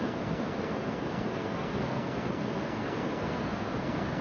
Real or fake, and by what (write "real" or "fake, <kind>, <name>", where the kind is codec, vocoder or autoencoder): fake, codec, SNAC